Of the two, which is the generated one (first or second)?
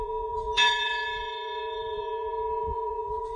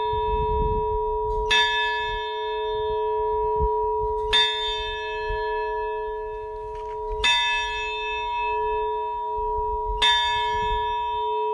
first